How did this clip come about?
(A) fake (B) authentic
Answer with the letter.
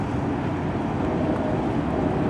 B